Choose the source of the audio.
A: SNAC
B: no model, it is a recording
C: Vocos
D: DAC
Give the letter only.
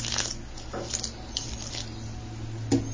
B